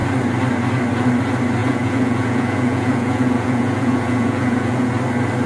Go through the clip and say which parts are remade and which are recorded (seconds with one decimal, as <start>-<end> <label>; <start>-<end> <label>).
0.0-1.6 recorded; 1.6-4.9 remade; 4.9-5.5 recorded